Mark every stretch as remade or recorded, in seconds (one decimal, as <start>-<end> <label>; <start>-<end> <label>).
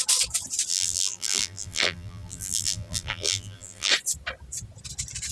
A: 0.0-0.7 recorded; 0.7-3.9 remade; 3.9-5.3 recorded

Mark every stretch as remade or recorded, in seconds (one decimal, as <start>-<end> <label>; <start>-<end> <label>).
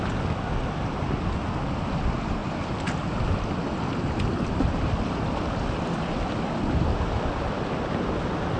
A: 0.0-2.4 recorded; 2.4-7.2 remade; 7.2-8.6 recorded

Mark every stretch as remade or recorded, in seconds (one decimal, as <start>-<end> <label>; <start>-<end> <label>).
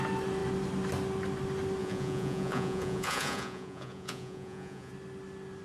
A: 0.0-1.8 recorded; 1.8-4.9 remade; 4.9-5.6 recorded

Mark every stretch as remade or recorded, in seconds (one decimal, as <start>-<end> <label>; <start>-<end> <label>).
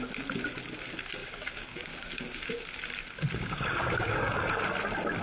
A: 0.0-1.2 recorded; 1.2-2.5 remade; 2.5-3.4 recorded; 3.4-4.4 remade; 4.4-5.2 recorded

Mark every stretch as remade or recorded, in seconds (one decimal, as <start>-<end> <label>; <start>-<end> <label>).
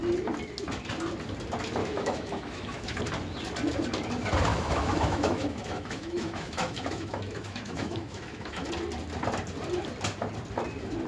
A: 0.0-1.8 recorded; 1.8-3.0 remade; 3.0-4.5 recorded; 4.5-8.7 remade; 8.7-11.1 recorded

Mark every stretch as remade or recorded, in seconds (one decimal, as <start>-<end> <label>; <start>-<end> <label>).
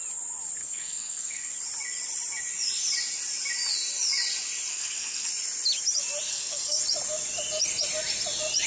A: 0.0-0.6 recorded; 0.6-1.5 remade; 1.5-4.7 recorded; 4.7-5.3 remade; 5.3-6.3 recorded; 6.3-6.8 remade; 6.8-8.7 recorded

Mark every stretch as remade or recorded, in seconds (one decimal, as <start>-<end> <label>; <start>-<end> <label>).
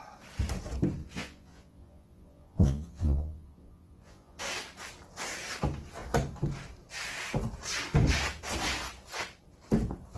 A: 0.0-1.0 recorded; 1.0-4.4 remade; 4.4-10.2 recorded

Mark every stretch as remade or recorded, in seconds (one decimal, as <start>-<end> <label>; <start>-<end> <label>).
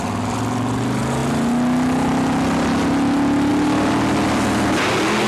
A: 0.0-5.3 recorded